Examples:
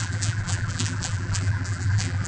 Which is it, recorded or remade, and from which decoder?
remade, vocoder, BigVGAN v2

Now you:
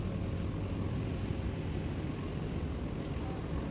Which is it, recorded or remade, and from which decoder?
recorded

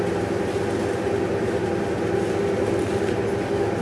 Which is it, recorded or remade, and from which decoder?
recorded